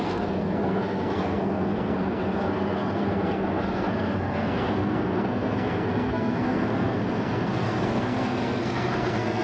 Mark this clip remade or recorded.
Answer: remade